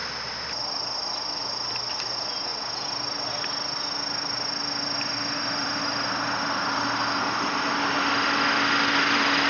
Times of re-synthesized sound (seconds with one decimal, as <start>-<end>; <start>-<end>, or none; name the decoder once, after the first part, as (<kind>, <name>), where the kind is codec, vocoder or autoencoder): none

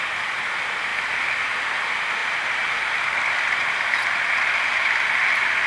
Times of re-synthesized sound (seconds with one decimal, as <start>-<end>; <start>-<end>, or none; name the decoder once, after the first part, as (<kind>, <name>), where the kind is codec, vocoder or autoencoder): 0.9-1.4 (vocoder, BigVGAN v2); 2.2-5.2

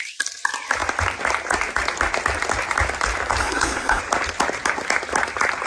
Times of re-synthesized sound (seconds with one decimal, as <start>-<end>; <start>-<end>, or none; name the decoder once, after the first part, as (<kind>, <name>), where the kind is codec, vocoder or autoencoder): 3.4-4.0 (codec, SNAC)

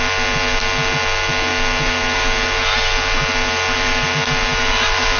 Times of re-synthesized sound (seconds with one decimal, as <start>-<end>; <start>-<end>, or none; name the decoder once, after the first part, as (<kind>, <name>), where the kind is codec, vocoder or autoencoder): none

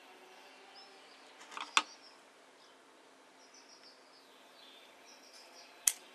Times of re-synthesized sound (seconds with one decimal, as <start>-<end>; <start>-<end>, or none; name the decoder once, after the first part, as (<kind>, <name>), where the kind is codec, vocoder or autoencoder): 0.0-0.5 (vocoder, BigVGAN v2); 4.2-6.1

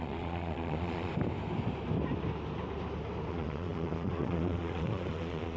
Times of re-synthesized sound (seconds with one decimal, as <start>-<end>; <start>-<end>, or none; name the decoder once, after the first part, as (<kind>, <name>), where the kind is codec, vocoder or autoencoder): 0.0-1.1 (vocoder, Vocos); 3.3-5.6